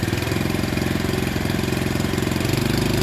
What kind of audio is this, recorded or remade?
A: remade